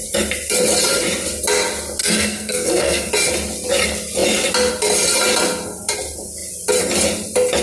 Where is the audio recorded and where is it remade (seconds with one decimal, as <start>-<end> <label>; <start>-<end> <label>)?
0.0-2.0 recorded; 2.0-3.1 remade; 3.1-7.6 recorded